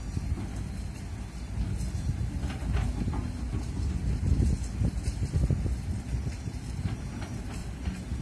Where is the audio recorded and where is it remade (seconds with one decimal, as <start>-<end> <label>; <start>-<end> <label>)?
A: 0.0-8.2 recorded